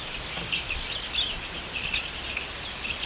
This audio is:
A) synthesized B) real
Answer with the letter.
B